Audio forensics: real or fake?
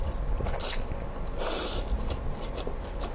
real